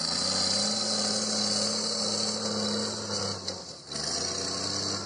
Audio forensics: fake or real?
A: real